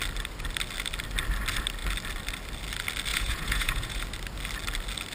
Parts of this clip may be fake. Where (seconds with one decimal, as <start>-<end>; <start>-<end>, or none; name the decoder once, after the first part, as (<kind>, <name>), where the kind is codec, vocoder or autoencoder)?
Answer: 3.1-4.0 (vocoder, Vocos)